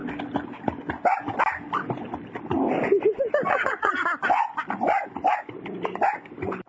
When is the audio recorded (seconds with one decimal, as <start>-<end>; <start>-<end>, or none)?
0.0-3.5; 4.0-6.7